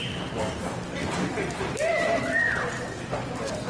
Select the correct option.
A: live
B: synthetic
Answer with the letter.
A